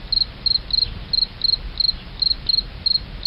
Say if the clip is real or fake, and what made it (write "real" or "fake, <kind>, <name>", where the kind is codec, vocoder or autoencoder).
real